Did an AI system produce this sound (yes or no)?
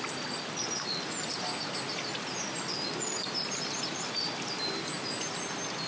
no